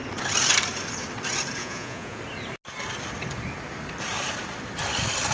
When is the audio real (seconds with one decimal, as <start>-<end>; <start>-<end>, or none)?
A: 0.0-1.6; 2.2-5.3